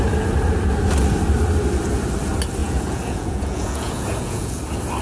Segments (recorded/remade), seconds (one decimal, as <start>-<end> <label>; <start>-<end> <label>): 0.0-2.6 recorded; 2.6-4.6 remade; 4.6-5.0 recorded